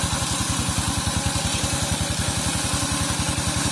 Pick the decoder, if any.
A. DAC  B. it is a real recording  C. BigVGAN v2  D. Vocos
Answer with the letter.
B